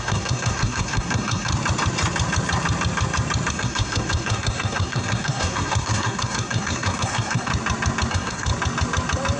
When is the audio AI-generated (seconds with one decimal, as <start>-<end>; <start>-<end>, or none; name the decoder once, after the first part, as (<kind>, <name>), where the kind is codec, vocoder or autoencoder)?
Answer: 0.0-1.5 (codec, SNAC); 3.5-7.5; 8.1-8.5